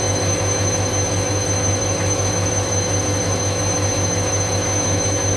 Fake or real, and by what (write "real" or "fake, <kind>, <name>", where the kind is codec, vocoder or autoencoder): fake, autoencoder, DAC-VAE